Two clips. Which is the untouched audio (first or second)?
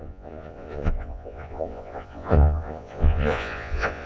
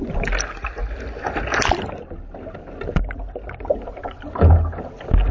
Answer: second